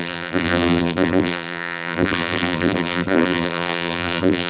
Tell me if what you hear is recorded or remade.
remade